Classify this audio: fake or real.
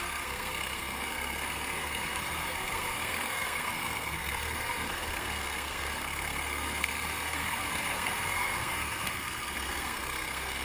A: fake